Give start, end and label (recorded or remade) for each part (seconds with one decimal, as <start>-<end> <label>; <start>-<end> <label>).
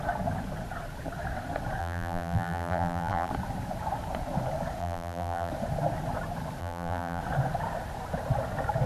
0.0-1.8 recorded; 1.8-3.3 remade; 3.3-4.8 recorded; 4.8-5.5 remade; 5.5-6.6 recorded; 6.6-7.2 remade; 7.2-8.9 recorded